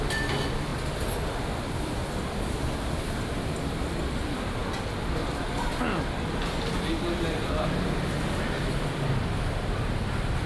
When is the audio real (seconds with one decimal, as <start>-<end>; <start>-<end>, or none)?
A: 4.6-8.2